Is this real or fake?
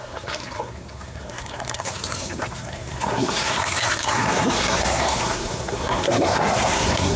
fake